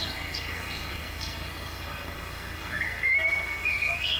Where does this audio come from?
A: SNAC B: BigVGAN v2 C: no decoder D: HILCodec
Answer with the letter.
A